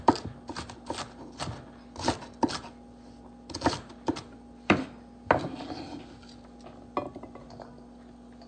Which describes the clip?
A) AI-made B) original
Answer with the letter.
B